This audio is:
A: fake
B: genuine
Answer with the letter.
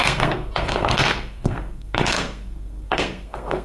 A